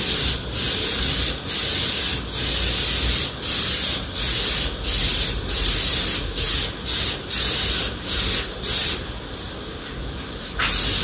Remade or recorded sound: recorded